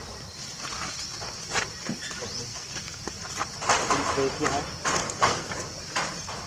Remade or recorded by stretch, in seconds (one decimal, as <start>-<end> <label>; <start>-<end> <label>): 0.0-2.5 recorded; 2.5-3.0 remade; 3.0-5.0 recorded; 5.0-5.5 remade; 5.5-6.5 recorded